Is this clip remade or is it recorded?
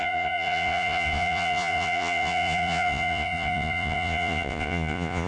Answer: remade